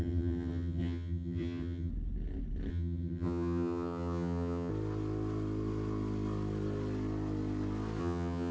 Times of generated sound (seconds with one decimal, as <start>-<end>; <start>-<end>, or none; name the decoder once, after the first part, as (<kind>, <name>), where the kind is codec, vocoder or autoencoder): 0.0-1.9 (vocoder, HiFi-GAN); 2.7-4.7; 8.0-8.5